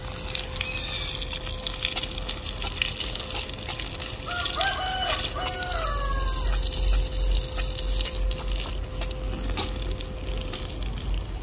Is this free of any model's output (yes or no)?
yes